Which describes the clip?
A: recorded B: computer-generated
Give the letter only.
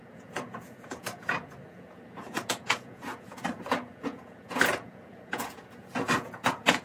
B